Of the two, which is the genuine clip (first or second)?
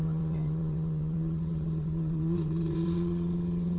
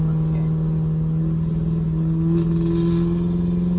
second